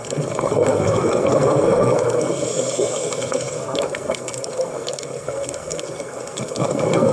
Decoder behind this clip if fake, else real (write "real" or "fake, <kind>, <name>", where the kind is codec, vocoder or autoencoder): fake, codec, SNAC